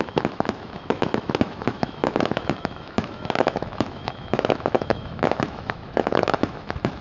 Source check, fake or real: fake